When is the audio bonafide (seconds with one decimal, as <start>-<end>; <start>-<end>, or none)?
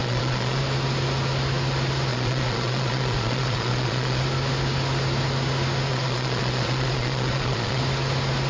0.6-2.1; 4.2-5.9; 7.8-8.5